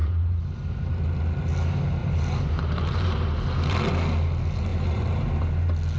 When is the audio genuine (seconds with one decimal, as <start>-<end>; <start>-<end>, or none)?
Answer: 0.9-2.0; 3.9-4.7; 5.4-6.0